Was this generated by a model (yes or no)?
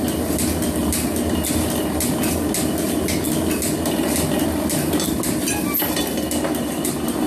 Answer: no